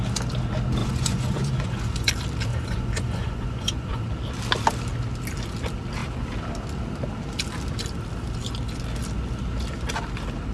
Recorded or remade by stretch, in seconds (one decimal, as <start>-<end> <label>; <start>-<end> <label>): 0.0-0.8 recorded; 0.8-2.1 remade; 2.1-2.5 recorded; 2.5-4.0 remade; 4.0-10.5 recorded